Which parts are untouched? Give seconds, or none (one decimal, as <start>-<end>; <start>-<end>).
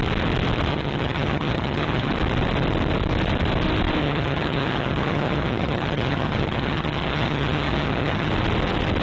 0.0-0.7; 2.1-4.0; 8.3-9.0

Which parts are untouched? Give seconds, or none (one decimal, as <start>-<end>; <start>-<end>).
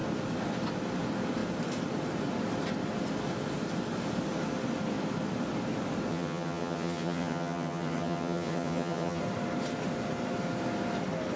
0.0-6.1; 9.2-11.4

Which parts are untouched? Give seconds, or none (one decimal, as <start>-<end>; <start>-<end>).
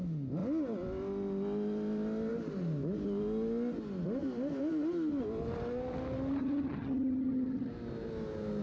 0.0-6.4; 7.7-8.6